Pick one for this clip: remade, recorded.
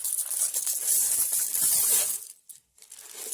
recorded